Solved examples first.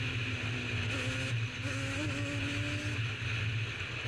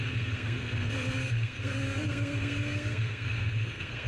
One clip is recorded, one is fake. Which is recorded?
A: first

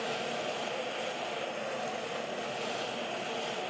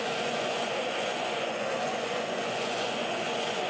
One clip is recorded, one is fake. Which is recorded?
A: first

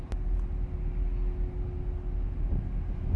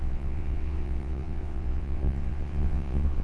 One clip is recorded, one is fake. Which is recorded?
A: first